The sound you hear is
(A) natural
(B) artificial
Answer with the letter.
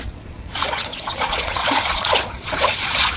B